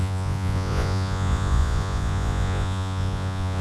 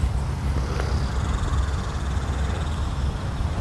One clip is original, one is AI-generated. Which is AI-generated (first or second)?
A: first